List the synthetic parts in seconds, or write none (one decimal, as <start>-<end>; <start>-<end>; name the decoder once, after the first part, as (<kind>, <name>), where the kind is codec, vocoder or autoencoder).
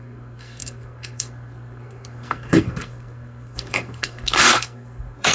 0.0-5.3 (codec, SNAC)